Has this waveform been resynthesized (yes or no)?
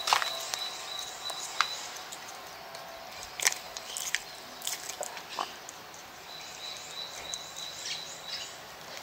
no